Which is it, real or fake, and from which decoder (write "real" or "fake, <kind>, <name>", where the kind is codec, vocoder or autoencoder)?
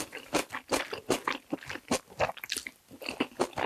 real